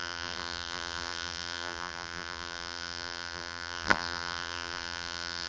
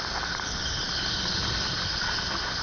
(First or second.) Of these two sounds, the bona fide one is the second